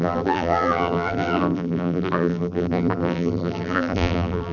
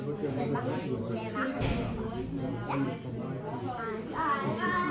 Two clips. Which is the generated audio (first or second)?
first